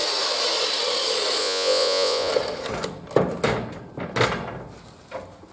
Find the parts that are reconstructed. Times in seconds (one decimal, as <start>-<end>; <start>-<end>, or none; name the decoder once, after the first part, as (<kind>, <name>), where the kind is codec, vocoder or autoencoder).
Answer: 1.4-2.3 (vocoder, Vocos)